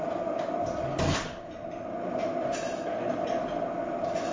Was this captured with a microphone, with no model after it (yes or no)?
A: yes